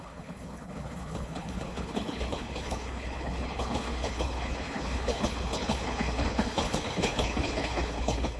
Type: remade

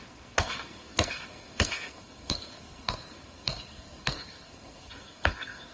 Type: remade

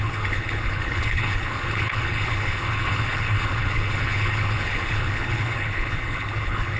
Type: remade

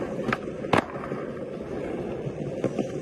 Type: recorded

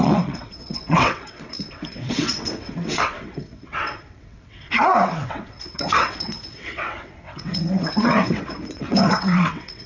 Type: remade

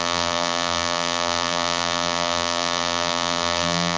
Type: remade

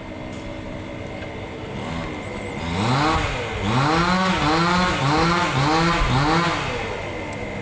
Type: recorded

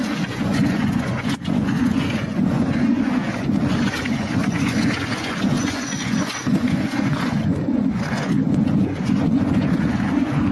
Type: remade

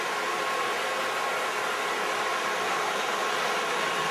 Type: recorded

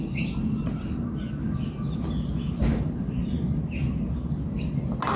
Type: recorded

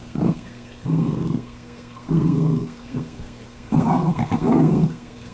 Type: remade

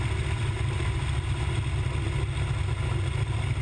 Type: recorded